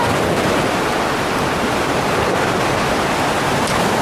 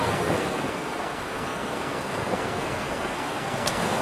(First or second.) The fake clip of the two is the second